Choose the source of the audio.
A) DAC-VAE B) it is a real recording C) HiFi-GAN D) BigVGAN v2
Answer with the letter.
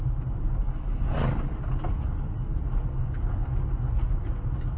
B